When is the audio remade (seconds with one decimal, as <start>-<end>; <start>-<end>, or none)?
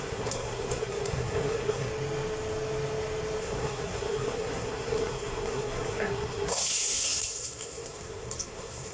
0.0-1.9; 3.4-8.9